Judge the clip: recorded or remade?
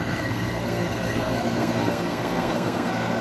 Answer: remade